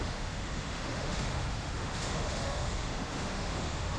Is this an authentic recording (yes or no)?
no